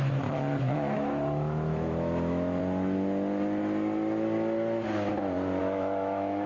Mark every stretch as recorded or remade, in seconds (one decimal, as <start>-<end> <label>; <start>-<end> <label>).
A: 0.0-2.6 remade; 2.6-5.6 recorded; 5.6-6.5 remade